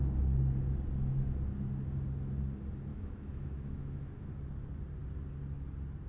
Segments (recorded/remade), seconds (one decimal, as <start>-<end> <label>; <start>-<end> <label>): 0.0-2.9 recorded; 2.9-4.3 remade; 4.3-6.1 recorded